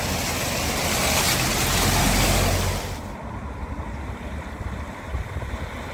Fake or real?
real